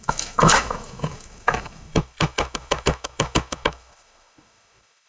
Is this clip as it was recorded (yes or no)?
no